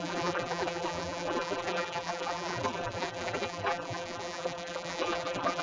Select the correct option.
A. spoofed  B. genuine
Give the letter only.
A